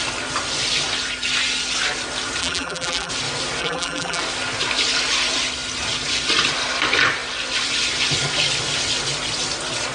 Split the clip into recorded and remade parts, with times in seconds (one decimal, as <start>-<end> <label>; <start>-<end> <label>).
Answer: 0.0-2.4 recorded; 2.4-3.1 remade; 3.1-3.6 recorded; 3.6-4.2 remade; 4.2-9.9 recorded